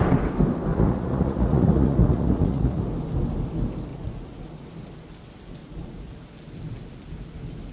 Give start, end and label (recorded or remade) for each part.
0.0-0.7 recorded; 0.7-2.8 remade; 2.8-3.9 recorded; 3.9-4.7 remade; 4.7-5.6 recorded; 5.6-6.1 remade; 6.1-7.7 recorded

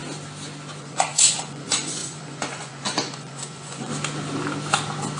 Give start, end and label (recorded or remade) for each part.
0.0-0.8 recorded; 0.8-3.9 remade; 3.9-5.2 recorded

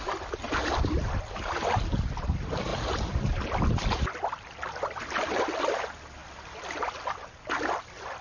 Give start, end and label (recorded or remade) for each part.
0.0-8.2 recorded

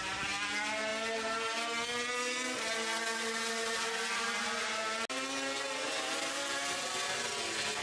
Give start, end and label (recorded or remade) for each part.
0.0-7.8 recorded

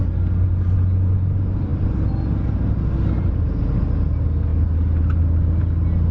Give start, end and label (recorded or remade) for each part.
0.0-6.1 recorded

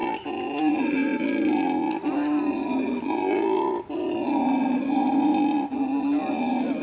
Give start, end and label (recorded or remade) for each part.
0.0-0.6 recorded; 0.6-1.1 remade; 1.1-4.8 recorded; 4.8-5.3 remade; 5.3-6.8 recorded